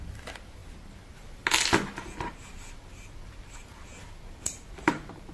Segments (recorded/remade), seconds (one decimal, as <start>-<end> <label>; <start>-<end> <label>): 0.0-5.3 recorded